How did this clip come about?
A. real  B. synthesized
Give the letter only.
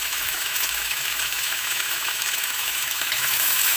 B